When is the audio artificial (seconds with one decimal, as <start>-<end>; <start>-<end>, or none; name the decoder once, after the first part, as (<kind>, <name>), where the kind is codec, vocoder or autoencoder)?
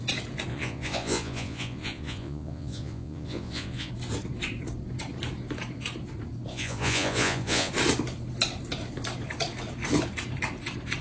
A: 0.5-3.9 (vocoder, Vocos); 6.5-7.7